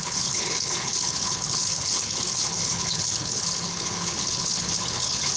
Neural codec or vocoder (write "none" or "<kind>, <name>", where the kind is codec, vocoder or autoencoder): codec, HILCodec